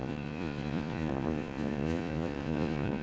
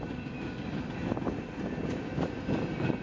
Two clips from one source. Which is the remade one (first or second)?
first